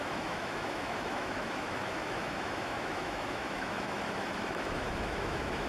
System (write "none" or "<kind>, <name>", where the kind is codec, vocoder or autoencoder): autoencoder, DAC-VAE